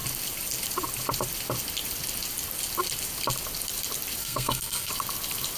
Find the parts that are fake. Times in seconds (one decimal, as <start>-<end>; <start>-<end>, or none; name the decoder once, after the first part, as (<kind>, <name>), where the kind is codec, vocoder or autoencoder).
4.2-4.9 (codec, SNAC)